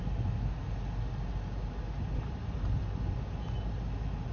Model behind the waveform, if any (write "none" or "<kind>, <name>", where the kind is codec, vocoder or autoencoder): none